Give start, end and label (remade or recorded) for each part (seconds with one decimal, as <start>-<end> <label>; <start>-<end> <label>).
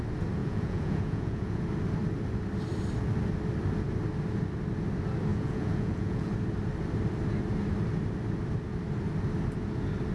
0.0-0.4 recorded; 0.4-1.6 remade; 1.6-5.3 recorded; 5.3-6.3 remade; 6.3-10.1 recorded